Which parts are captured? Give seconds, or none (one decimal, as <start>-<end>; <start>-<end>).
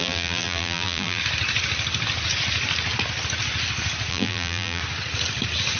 1.2-4.1; 4.8-5.8